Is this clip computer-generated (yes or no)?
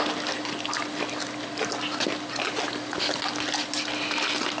no